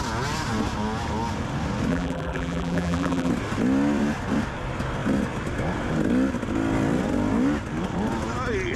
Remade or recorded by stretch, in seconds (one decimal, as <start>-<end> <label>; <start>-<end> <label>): 0.0-1.9 recorded; 1.9-3.3 remade; 3.3-8.8 recorded